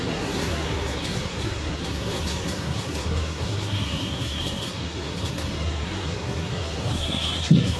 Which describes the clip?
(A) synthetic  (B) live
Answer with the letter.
A